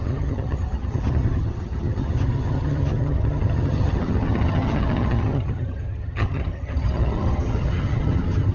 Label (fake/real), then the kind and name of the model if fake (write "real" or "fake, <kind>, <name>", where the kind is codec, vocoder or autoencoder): fake, vocoder, HiFi-GAN